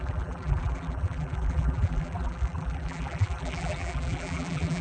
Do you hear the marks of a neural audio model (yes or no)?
yes